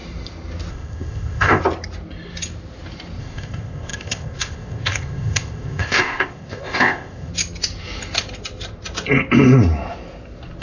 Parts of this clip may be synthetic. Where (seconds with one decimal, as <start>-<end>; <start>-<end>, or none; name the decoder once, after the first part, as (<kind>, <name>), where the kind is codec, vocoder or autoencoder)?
0.7-1.6 (codec, ZipCodec); 3.2-7.3